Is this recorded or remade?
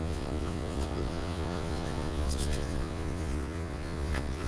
remade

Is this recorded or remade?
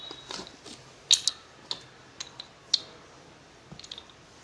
recorded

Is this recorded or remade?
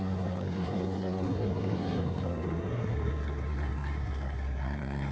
remade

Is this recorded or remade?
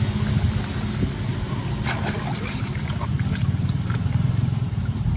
recorded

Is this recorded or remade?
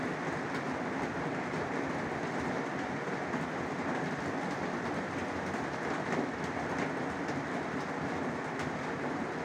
recorded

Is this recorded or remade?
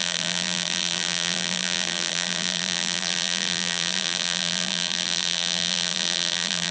remade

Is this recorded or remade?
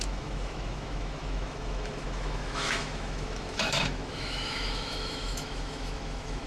remade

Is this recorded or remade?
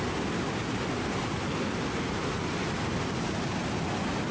recorded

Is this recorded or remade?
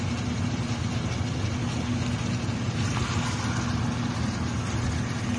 recorded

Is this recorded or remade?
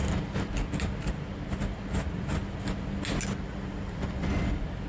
recorded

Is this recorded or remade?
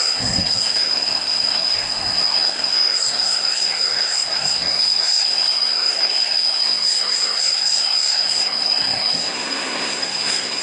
remade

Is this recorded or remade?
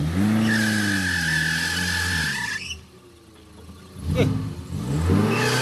recorded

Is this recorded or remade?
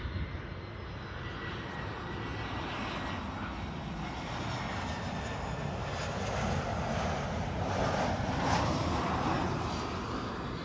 recorded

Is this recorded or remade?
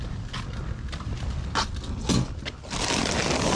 recorded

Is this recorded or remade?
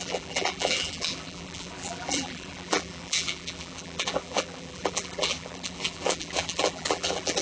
remade